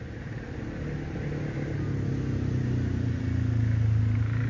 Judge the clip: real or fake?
real